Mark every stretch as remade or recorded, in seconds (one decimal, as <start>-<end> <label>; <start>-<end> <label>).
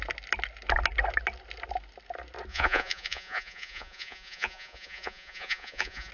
0.0-2.5 recorded; 2.5-6.1 remade